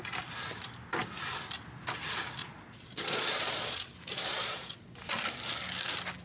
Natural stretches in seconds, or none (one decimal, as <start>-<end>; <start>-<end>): 0.0-2.4; 3.9-4.3; 4.9-6.2